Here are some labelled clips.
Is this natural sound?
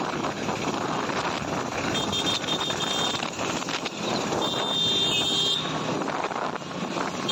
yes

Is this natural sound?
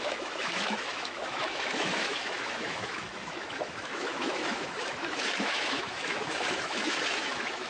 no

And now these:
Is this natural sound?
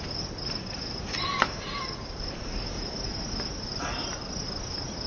yes